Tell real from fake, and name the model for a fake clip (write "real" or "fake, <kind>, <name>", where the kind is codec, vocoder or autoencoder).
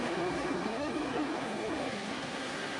fake, codec, SNAC